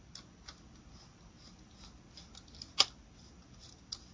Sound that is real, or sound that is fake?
real